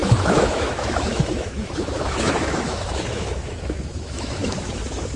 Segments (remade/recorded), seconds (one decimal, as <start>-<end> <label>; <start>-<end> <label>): 0.0-5.2 remade